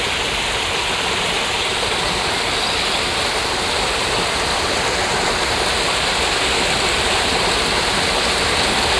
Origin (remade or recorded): recorded